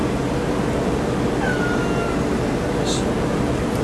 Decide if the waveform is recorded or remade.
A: recorded